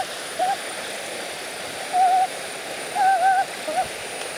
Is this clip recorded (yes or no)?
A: yes